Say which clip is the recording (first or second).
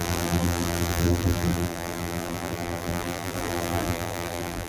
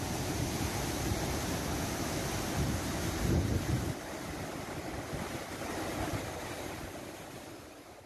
second